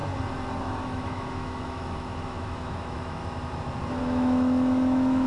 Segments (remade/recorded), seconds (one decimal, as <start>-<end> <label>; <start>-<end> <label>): 0.0-0.6 recorded; 0.6-3.2 remade; 3.2-4.0 recorded; 4.0-5.3 remade